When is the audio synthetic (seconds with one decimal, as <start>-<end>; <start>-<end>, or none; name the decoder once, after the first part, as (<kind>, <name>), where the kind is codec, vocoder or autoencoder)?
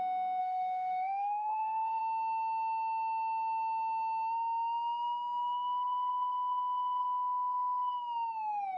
0.4-2.0 (codec, DAC)